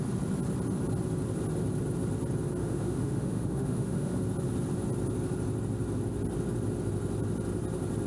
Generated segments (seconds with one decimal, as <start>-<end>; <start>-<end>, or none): 2.6-4.2